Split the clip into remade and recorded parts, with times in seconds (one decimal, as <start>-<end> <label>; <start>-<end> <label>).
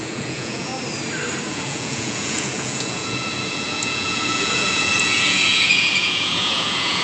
0.0-0.7 remade; 0.7-1.5 recorded; 1.5-7.0 remade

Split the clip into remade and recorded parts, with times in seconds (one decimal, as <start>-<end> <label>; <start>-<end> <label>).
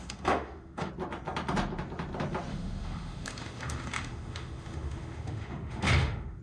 0.0-0.9 remade; 0.9-2.5 recorded; 2.5-6.4 remade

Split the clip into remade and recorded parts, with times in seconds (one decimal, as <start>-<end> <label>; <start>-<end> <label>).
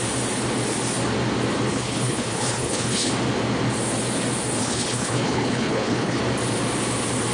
0.0-1.7 recorded; 1.7-3.1 remade; 3.1-4.6 recorded; 4.6-6.2 remade; 6.2-7.3 recorded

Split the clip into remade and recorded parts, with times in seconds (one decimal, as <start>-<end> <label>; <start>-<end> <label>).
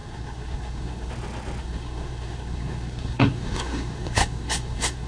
0.0-1.1 remade; 1.1-1.6 recorded; 1.6-5.1 remade